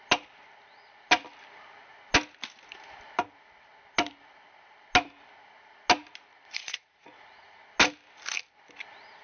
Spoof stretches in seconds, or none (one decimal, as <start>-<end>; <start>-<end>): 6.3-7.6